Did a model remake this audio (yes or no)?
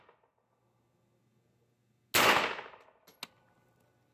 no